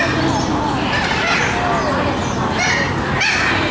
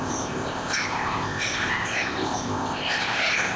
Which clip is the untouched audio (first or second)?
first